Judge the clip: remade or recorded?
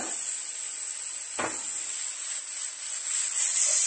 recorded